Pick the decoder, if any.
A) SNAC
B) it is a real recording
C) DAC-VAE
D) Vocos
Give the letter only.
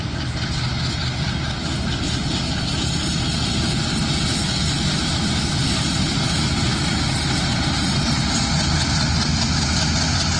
B